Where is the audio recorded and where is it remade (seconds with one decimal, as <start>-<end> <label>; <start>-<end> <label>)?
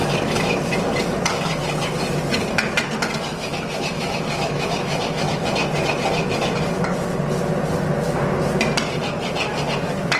0.0-3.3 recorded; 3.3-5.4 remade; 5.4-10.2 recorded